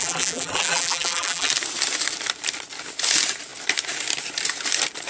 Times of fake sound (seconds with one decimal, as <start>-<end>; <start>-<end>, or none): 0.0-1.5